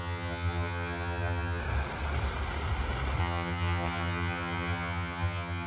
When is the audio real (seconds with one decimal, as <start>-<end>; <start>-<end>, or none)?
1.6-3.2